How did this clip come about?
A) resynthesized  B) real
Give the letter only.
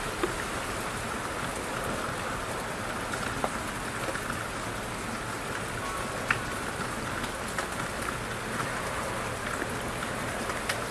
B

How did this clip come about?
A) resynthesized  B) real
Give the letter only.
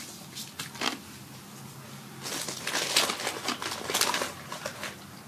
B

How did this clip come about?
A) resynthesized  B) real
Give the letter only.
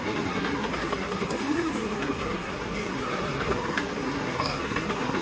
A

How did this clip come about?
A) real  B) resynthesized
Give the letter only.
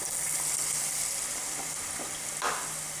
A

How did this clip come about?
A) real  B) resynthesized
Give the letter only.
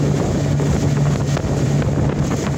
A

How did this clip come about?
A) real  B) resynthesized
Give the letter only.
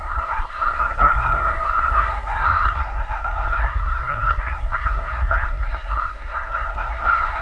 B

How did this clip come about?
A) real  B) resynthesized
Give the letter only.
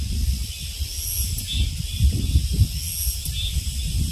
A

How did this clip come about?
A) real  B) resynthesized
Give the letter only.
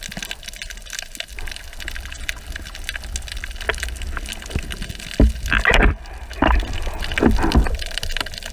A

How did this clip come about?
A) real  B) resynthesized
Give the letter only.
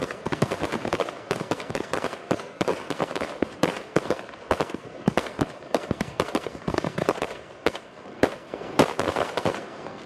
B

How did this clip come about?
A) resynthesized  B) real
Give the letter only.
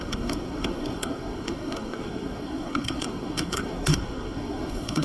A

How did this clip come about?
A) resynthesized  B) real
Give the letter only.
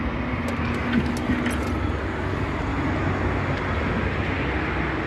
B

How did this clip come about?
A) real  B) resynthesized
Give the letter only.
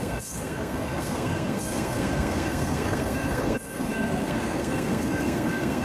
B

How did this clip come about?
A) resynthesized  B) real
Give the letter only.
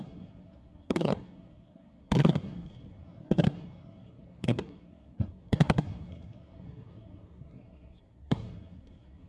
A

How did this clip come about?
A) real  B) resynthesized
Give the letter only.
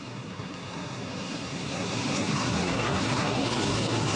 B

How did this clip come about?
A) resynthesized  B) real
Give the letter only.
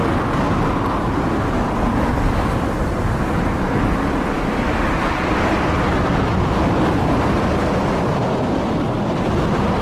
B